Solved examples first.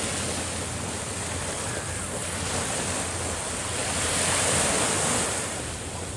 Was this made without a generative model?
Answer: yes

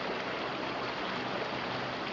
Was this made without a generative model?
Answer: yes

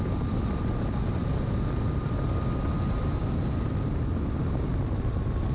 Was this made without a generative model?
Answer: yes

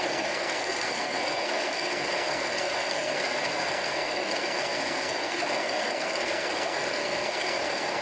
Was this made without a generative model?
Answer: no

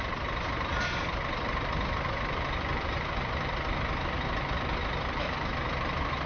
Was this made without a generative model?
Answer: no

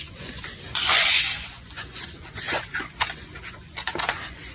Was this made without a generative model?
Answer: no